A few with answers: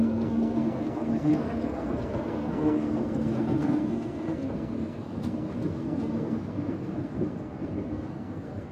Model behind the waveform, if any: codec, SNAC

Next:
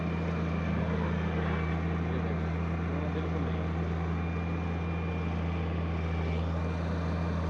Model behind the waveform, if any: none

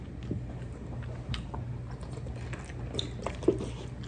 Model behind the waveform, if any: none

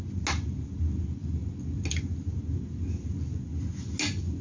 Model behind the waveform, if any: none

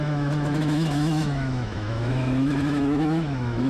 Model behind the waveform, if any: autoencoder, DAC-VAE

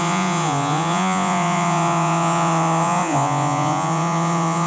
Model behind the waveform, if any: vocoder, Vocos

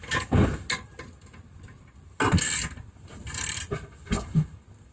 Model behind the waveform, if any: none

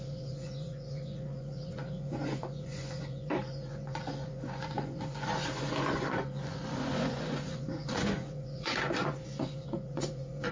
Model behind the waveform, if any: vocoder, Vocos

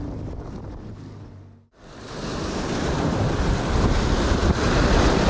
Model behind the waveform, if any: none